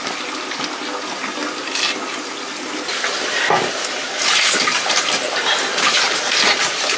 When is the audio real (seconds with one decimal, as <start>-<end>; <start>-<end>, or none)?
0.0-3.6; 6.6-7.0